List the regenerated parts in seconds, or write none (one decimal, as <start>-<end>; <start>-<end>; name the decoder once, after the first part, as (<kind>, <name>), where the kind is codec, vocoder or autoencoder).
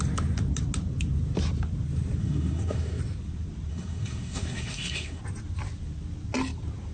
2.2-3.0 (codec, SNAC); 3.7-5.2